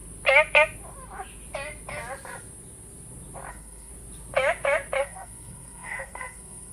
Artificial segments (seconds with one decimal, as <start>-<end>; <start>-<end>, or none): 3.5-3.9; 5.0-6.7